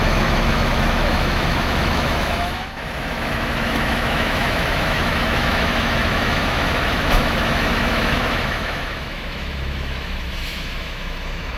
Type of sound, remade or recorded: remade